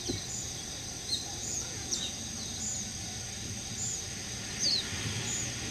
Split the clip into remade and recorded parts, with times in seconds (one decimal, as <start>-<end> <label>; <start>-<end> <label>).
0.0-1.4 recorded; 1.4-2.2 remade; 2.2-5.7 recorded